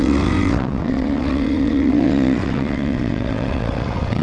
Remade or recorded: remade